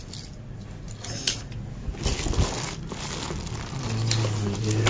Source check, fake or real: real